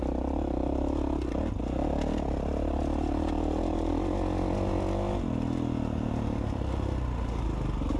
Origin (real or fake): real